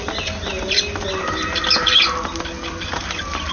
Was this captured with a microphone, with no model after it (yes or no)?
yes